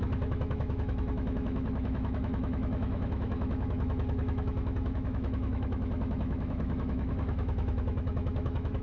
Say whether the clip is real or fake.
fake